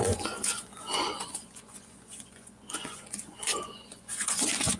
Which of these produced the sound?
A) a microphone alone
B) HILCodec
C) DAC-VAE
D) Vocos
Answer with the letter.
D